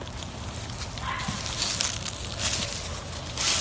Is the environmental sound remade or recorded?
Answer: recorded